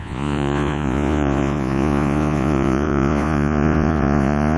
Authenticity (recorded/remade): remade